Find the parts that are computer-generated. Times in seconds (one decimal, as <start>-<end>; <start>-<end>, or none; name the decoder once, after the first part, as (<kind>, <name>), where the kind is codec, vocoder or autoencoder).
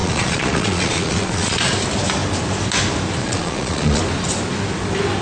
0.0-1.7 (vocoder, Vocos); 3.2-4.0